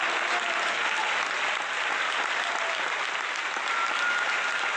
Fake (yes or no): no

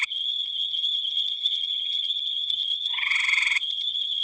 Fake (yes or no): yes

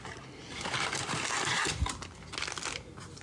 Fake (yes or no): no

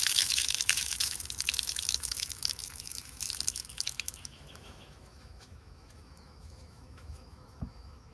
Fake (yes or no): yes